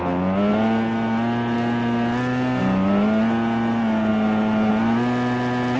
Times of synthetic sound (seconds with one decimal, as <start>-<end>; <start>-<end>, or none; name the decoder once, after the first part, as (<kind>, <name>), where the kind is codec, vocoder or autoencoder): none